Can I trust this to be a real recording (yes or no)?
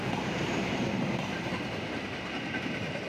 yes